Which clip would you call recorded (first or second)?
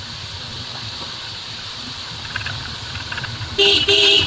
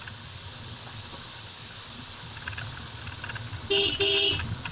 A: second